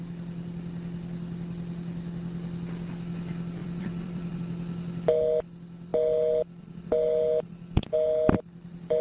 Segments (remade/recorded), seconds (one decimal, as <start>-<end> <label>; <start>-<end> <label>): 0.0-3.6 recorded; 3.6-4.4 remade; 4.4-9.0 recorded